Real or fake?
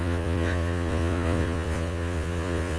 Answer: fake